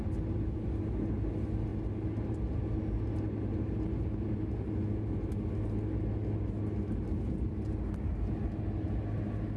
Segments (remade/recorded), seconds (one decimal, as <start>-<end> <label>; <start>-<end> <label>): 0.0-9.6 recorded